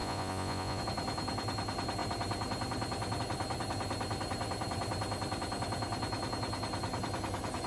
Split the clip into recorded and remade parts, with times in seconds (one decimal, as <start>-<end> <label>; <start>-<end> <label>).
0.0-0.8 remade; 0.8-7.7 recorded